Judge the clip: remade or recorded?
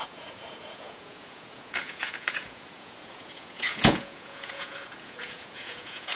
remade